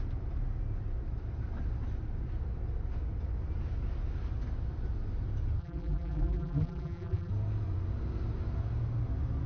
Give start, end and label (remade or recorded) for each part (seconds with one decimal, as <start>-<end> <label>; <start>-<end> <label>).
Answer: 0.0-5.6 recorded; 5.6-7.3 remade; 7.3-9.5 recorded